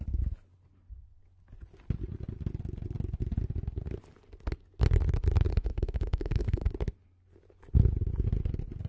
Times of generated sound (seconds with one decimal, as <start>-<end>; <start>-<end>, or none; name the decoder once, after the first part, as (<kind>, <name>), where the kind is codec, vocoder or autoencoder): 5.5-6.7 (autoencoder, DAC-VAE)